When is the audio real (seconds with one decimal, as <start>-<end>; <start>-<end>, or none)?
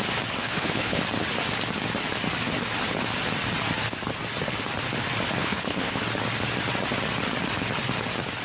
0.0-0.4; 1.0-5.4; 6.0-8.4